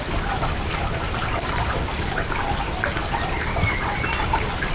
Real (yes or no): yes